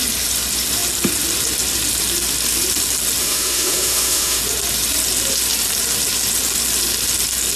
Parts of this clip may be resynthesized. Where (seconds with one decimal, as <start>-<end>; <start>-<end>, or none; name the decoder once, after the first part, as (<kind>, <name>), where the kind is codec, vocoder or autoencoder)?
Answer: 3.2-4.4 (autoencoder, DAC-VAE)